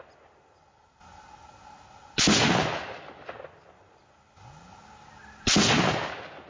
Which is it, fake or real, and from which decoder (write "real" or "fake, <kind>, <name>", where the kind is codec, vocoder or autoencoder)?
real